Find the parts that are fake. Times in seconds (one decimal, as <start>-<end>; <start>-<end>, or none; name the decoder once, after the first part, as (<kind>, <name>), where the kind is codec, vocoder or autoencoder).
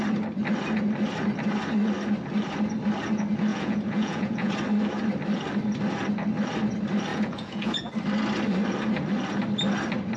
3.5-4.5 (vocoder, Vocos); 7.1-7.9